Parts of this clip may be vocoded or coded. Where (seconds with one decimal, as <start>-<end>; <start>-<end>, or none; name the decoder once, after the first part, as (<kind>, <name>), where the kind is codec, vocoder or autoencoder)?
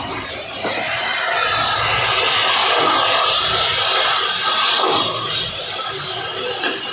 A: 0.0-1.1 (vocoder, BigVGAN v2); 4.2-6.9